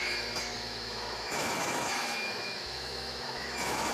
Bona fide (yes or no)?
no